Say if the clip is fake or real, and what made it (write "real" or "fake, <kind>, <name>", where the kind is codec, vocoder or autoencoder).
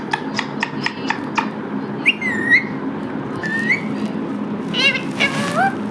real